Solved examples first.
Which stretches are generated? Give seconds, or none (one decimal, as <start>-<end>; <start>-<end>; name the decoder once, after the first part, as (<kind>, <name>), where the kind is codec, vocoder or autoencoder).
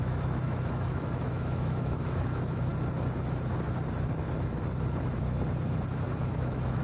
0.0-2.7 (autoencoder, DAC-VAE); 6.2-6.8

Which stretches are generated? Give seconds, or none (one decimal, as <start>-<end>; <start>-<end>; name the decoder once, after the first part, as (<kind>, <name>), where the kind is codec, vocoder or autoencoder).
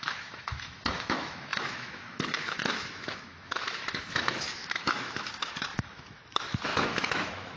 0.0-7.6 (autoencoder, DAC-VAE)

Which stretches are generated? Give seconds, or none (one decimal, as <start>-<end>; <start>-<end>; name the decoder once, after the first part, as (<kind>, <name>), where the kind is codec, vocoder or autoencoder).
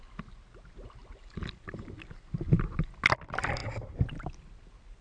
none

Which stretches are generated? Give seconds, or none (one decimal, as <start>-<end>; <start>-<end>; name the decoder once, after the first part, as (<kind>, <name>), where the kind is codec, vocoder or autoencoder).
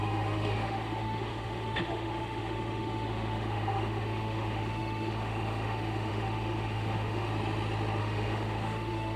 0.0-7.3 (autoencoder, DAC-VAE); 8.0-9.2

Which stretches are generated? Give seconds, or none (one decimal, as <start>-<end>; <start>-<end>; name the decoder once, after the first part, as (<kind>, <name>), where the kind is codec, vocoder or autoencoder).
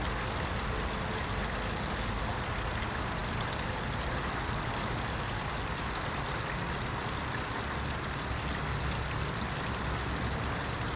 none